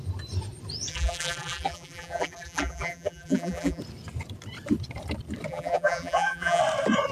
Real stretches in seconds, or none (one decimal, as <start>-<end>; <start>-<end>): 0.0-0.9; 3.8-5.5; 6.6-7.1